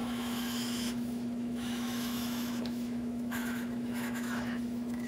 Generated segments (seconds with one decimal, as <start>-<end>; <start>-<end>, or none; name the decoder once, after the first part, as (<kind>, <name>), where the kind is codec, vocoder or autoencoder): 0.0-5.1 (autoencoder, DAC-VAE)